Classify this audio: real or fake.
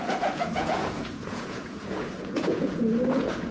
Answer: fake